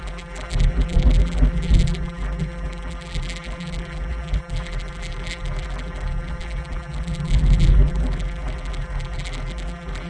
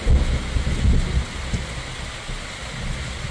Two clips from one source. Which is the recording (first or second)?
second